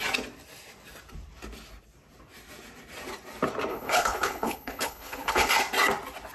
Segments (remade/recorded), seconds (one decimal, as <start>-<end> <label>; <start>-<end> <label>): 0.0-3.7 recorded; 3.7-5.5 remade; 5.5-6.3 recorded